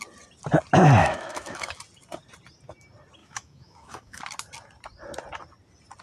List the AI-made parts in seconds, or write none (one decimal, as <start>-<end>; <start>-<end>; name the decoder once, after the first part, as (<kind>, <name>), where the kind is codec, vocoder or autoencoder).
1.0-1.8 (autoencoder, DAC-VAE); 3.2-4.2